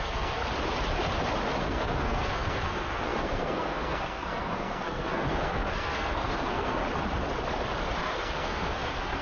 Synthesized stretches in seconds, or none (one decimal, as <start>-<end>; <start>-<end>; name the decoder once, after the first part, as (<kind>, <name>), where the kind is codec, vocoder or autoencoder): 0.0-0.4 (codec, SNAC); 1.6-6.8; 8.0-9.2